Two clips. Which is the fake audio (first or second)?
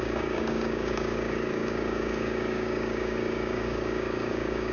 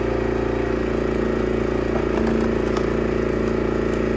first